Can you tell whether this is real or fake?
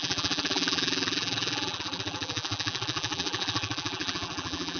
fake